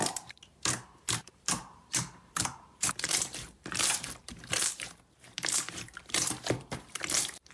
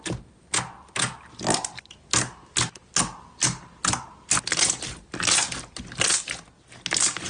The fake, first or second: first